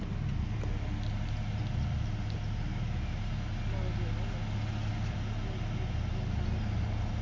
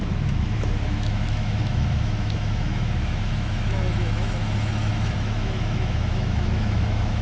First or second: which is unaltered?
first